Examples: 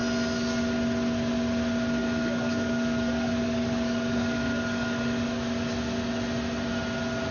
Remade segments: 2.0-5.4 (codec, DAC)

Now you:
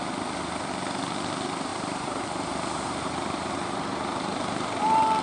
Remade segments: 1.7-4.8 (vocoder, BigVGAN v2)

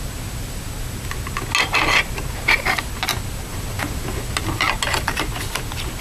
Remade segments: none